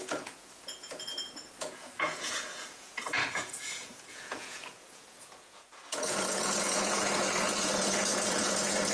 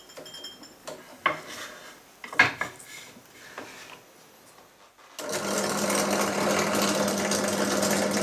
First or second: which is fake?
first